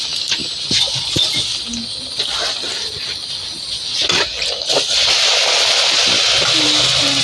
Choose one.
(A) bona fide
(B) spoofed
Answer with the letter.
A